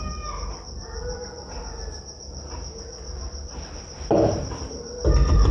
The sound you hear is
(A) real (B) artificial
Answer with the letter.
B